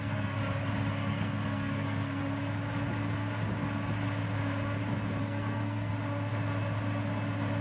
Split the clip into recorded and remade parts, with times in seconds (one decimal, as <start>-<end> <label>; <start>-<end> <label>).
0.0-0.4 remade; 0.4-0.9 recorded; 0.9-2.2 remade; 2.2-5.2 recorded; 5.2-5.9 remade; 5.9-7.6 recorded

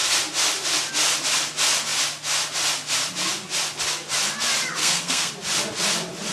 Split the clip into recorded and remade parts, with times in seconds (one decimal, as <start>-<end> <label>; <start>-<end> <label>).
0.0-4.8 recorded; 4.8-5.3 remade; 5.3-6.3 recorded

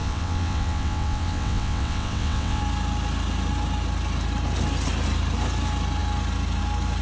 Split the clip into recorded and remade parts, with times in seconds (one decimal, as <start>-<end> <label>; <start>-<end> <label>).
0.0-2.6 remade; 2.6-7.0 recorded